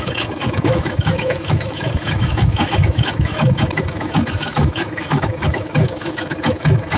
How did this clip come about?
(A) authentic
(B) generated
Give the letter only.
B